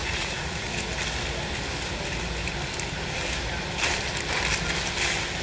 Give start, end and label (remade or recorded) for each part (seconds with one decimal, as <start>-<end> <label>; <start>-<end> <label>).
0.0-0.7 remade; 0.7-5.4 recorded